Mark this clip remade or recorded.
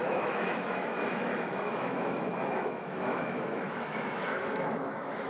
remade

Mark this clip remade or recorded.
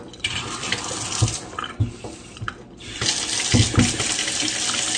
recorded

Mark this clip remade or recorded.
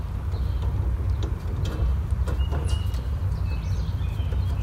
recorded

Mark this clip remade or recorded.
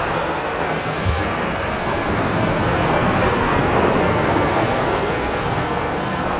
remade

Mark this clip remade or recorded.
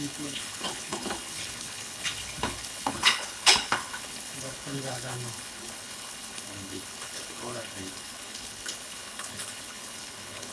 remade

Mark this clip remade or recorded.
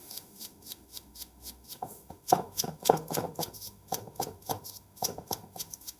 remade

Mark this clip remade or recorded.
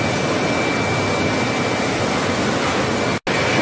recorded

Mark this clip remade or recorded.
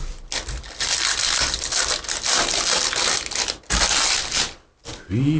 recorded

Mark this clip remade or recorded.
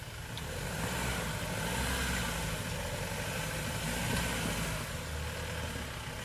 recorded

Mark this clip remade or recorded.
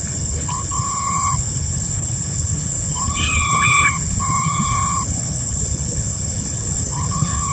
remade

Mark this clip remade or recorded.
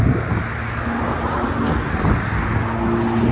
recorded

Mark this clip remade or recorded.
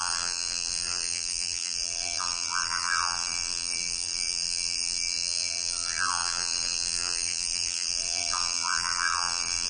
remade